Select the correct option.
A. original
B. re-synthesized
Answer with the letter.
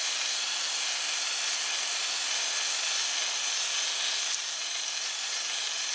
A